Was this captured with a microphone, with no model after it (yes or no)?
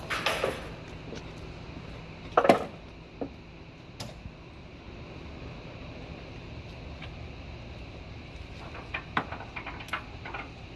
yes